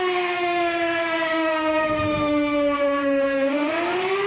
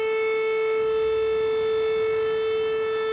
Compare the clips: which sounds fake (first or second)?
first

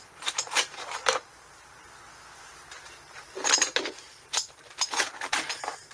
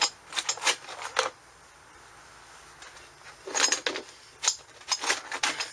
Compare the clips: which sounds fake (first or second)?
first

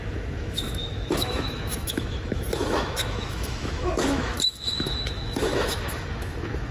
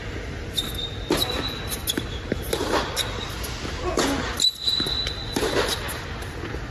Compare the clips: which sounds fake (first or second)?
first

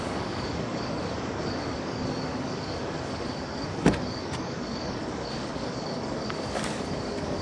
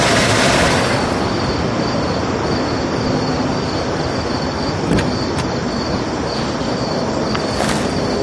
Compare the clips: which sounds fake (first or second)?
first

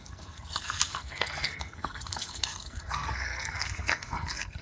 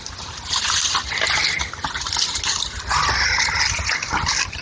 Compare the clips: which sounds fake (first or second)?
first